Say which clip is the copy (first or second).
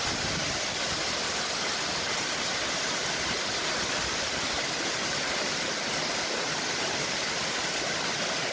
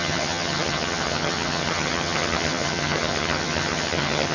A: second